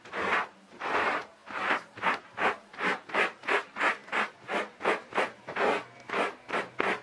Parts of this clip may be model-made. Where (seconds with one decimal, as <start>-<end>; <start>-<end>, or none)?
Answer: none